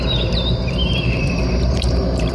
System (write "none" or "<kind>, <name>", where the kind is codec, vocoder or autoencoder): vocoder, BigVGAN v2